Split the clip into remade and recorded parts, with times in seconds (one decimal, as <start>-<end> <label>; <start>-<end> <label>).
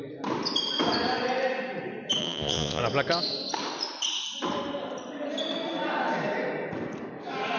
0.0-2.2 recorded; 2.2-2.8 remade; 2.8-7.6 recorded